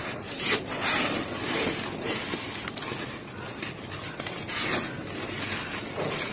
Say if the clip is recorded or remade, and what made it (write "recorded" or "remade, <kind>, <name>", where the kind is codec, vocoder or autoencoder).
recorded